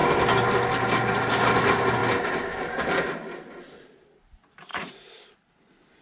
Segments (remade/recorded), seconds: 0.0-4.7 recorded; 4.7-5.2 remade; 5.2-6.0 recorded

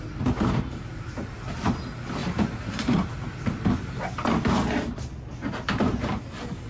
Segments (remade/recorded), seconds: 0.0-2.2 recorded; 2.2-3.1 remade; 3.1-6.7 recorded

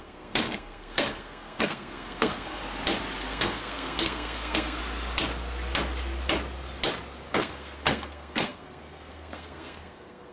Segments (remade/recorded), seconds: 0.0-2.6 remade; 2.6-3.2 recorded; 3.2-4.8 remade; 4.8-7.3 recorded; 7.3-10.3 remade

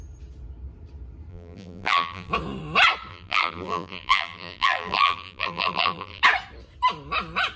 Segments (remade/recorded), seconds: 0.0-1.3 recorded; 1.3-2.3 remade; 2.3-3.1 recorded; 3.1-6.2 remade; 6.2-7.6 recorded

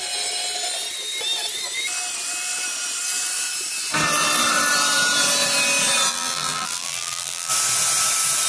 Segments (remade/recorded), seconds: 0.0-6.1 recorded; 6.1-7.5 remade; 7.5-8.5 recorded

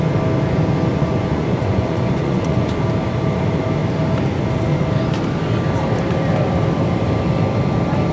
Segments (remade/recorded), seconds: 0.0-0.9 recorded; 0.9-2.7 remade; 2.7-8.1 recorded

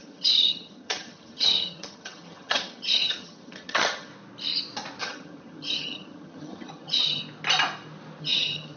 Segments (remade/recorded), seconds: 0.0-4.1 remade; 4.1-5.0 recorded; 5.0-7.2 remade; 7.2-8.2 recorded; 8.2-8.8 remade

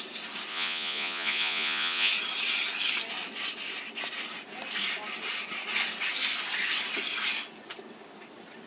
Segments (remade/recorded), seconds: 0.0-0.5 recorded; 0.5-2.1 remade; 2.1-8.7 recorded